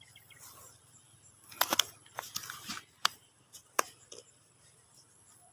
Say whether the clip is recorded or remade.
recorded